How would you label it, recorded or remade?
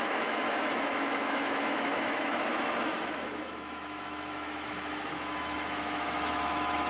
remade